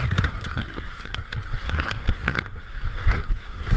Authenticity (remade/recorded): remade